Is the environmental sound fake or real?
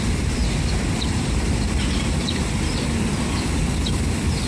fake